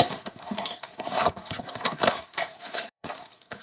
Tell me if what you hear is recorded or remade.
remade